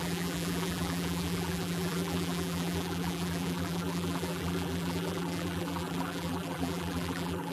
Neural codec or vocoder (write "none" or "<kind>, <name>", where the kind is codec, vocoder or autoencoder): vocoder, BigVGAN v2